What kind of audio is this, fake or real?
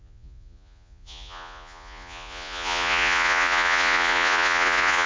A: fake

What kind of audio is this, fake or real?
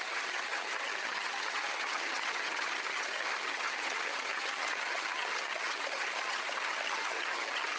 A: fake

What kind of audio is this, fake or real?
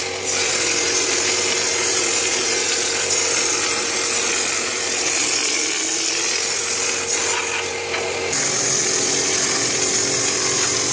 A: real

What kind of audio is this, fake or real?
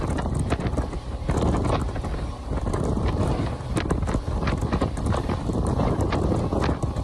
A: fake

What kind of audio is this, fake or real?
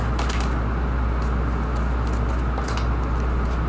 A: real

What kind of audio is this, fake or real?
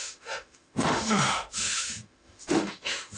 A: fake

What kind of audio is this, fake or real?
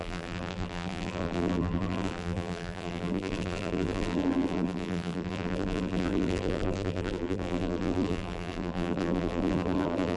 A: fake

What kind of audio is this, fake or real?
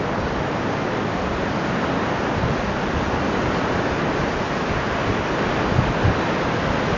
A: real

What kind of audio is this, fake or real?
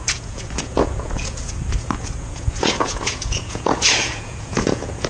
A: fake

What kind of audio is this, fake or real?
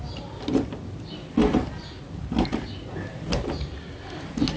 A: real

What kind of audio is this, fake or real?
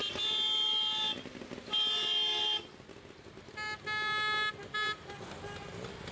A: real